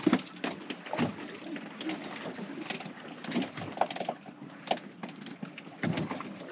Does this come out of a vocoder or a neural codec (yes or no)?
no